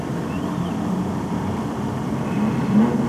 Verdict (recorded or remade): remade